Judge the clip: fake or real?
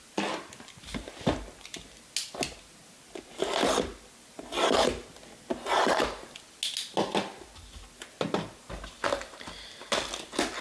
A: real